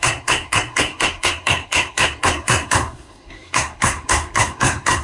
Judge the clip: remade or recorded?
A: remade